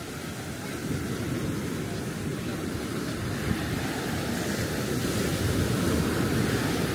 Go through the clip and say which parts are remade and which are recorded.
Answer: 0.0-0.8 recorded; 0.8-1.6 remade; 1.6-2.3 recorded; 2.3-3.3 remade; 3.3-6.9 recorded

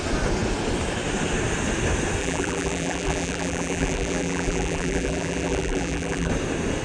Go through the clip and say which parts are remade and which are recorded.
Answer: 0.0-2.2 recorded; 2.2-6.3 remade; 6.3-6.8 recorded